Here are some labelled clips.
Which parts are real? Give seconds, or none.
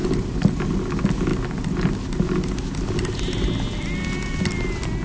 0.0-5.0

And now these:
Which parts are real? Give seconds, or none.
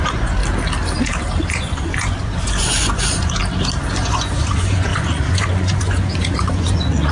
0.4-1.5; 3.4-4.0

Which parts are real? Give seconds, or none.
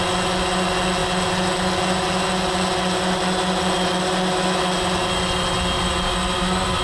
0.0-6.8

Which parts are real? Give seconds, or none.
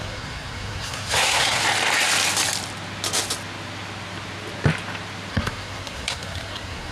1.6-5.3